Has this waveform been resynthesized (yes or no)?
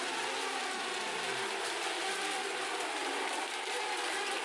no